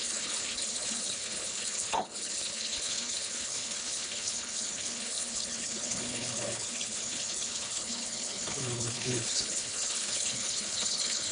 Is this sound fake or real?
fake